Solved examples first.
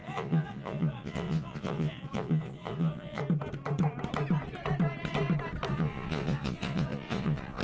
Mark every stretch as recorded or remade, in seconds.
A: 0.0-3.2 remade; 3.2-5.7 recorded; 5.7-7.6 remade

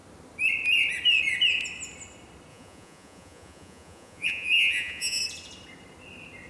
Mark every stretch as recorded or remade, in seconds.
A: 0.0-2.5 recorded; 2.5-5.2 remade; 5.2-6.5 recorded

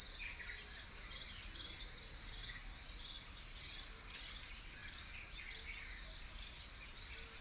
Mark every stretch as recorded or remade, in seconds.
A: 0.0-7.4 recorded

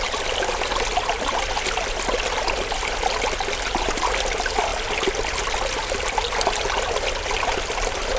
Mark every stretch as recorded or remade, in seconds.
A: 0.0-8.2 recorded

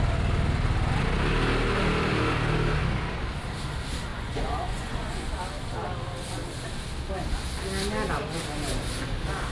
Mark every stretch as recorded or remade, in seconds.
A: 0.0-4.1 recorded; 4.1-5.3 remade; 5.3-9.5 recorded

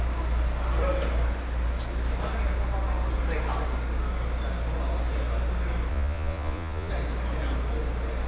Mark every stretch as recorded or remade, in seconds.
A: 0.0-5.9 recorded; 5.9-6.9 remade; 6.9-8.3 recorded